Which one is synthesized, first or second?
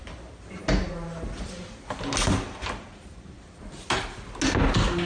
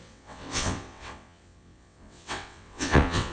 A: second